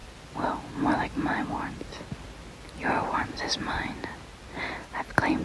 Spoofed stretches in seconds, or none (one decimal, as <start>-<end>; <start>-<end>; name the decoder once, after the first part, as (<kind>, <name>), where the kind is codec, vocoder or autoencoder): none